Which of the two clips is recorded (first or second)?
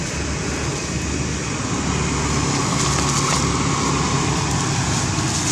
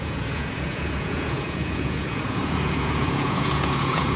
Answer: first